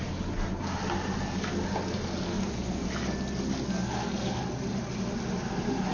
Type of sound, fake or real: real